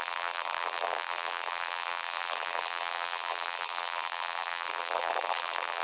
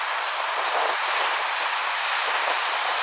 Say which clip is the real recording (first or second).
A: second